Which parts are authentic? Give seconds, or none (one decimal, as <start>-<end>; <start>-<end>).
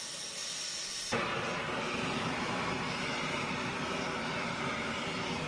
0.0-0.4; 3.7-5.5